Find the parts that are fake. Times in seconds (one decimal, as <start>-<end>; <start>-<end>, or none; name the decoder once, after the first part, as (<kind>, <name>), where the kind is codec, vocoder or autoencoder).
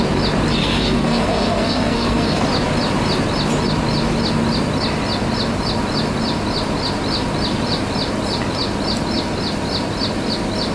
0.6-2.4 (codec, SNAC)